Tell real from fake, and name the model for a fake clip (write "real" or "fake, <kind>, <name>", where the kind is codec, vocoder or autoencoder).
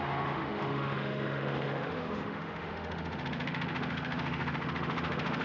fake, autoencoder, DAC-VAE